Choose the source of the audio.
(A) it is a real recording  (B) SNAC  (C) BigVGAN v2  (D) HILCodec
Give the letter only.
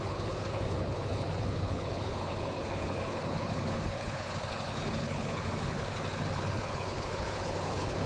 D